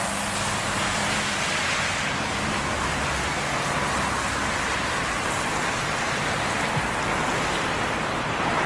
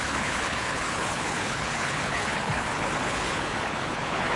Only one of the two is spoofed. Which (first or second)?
second